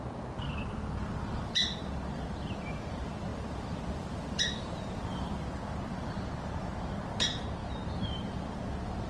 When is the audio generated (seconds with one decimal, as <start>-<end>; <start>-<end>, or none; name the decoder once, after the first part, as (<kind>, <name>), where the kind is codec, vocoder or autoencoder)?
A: none